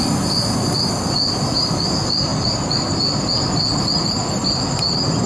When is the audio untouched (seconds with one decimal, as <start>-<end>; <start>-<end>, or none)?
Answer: 0.0-5.3